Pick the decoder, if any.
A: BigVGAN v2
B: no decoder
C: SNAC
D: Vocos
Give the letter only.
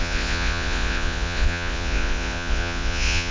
D